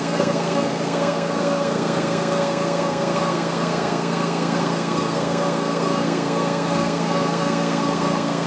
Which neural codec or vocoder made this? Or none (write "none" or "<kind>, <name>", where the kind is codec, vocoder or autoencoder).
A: codec, SNAC